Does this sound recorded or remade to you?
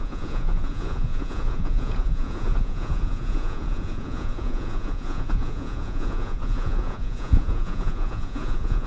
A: remade